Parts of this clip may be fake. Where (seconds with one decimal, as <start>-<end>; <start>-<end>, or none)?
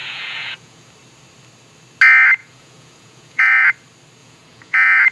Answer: 0.0-0.9; 2.4-3.7; 4.2-5.1